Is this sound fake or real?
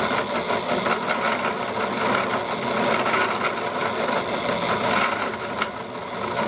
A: real